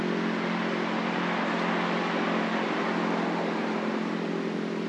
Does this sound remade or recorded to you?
recorded